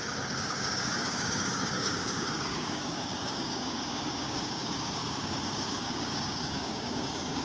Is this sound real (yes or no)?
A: no